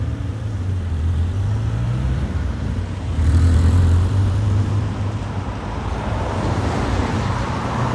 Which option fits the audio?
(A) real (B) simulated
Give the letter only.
B